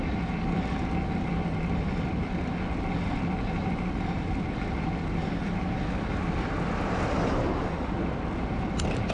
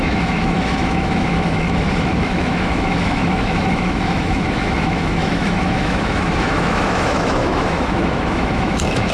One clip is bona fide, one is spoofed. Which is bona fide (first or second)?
first